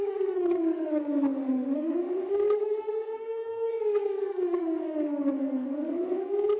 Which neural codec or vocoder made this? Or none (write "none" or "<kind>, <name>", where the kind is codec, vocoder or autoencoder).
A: codec, SNAC